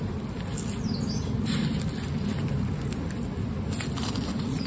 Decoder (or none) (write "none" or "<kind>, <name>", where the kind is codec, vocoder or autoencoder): none